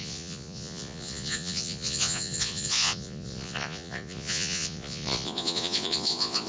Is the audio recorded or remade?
remade